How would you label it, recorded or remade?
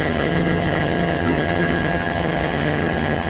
remade